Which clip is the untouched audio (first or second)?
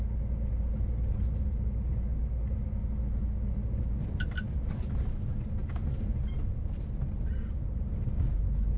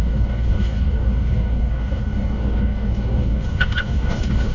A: first